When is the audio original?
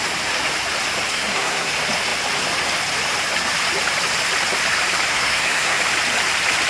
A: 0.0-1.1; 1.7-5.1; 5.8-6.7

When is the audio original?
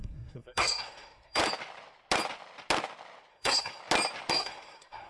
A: 1.4-3.3; 3.8-4.3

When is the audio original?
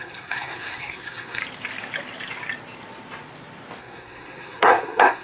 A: 1.4-3.8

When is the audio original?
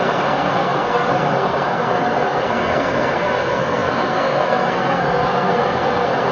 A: none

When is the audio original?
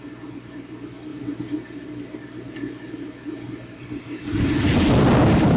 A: 0.0-5.6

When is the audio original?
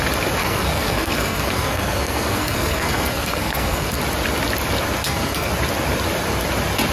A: 0.0-0.4; 4.0-5.0; 5.5-6.9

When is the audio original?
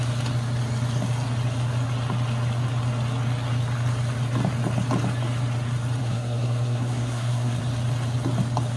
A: 0.0-6.0; 7.6-8.8